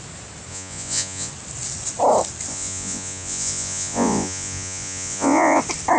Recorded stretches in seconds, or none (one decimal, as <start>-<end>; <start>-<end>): 0.0-0.5; 1.3-2.5; 5.6-6.0